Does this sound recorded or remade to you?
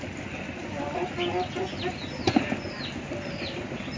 recorded